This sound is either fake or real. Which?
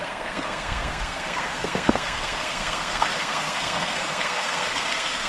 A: fake